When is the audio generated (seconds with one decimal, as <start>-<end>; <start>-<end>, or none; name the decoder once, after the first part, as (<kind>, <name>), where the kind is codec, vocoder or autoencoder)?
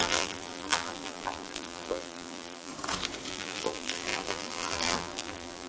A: 0.0-2.7 (vocoder, BigVGAN v2); 3.3-5.7